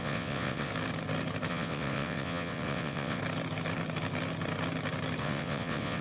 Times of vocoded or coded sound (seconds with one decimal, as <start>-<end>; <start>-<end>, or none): 0.0-0.7; 1.5-3.2; 5.2-6.0